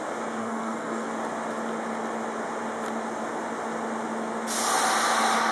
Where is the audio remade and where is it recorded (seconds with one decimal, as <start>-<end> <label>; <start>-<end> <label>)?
0.0-0.4 recorded; 0.4-1.1 remade; 1.1-5.5 recorded